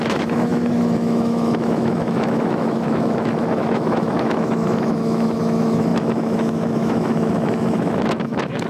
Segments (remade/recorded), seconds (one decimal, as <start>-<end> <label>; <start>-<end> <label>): 0.0-8.7 remade